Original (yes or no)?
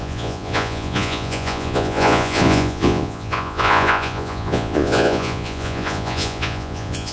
no